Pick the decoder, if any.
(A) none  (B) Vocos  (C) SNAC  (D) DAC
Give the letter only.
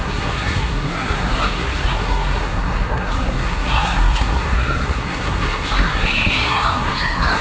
C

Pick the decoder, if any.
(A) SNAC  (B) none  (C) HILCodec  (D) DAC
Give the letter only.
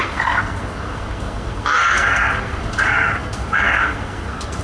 A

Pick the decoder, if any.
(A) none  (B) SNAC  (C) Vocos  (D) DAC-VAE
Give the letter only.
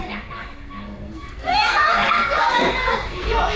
B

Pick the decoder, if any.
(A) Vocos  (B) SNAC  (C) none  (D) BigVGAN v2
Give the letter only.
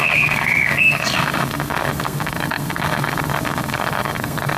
B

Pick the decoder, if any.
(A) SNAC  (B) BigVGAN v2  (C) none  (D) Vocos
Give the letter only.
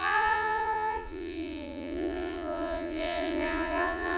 D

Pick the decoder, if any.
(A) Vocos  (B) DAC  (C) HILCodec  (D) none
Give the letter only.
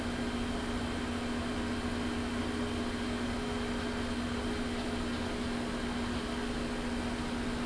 D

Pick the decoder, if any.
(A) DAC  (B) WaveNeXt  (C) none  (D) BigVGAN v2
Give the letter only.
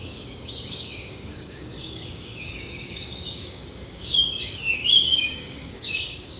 A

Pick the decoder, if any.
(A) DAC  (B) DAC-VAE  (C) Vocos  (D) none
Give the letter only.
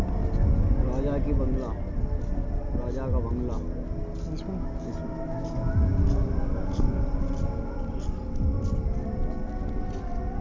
D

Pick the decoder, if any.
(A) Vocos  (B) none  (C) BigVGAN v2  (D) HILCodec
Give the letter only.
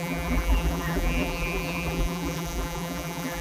C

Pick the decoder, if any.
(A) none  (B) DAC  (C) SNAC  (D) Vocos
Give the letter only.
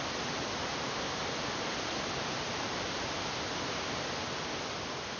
A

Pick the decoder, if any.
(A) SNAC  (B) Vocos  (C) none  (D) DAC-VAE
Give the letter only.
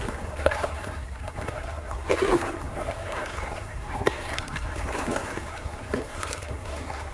A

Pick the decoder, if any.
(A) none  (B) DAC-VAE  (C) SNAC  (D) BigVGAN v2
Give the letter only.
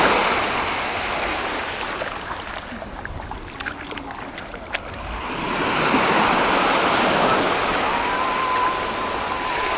A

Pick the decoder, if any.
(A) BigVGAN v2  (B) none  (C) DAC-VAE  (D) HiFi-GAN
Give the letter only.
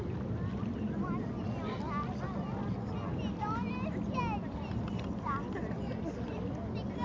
B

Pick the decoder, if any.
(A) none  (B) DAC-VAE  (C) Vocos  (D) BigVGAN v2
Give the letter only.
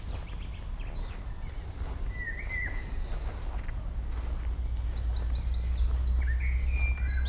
A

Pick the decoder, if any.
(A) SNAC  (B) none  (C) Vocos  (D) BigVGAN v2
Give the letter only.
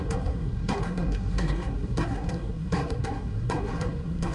A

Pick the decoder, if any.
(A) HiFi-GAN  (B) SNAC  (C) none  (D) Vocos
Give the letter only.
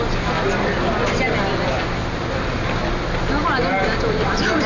C